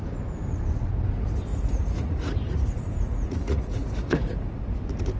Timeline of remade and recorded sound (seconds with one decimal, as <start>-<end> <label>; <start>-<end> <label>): 0.0-1.5 recorded; 1.5-4.6 remade; 4.6-5.2 recorded